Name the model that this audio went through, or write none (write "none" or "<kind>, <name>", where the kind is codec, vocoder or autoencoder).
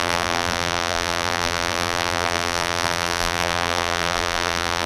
vocoder, BigVGAN v2